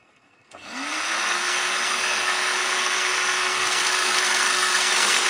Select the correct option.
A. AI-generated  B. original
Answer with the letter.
A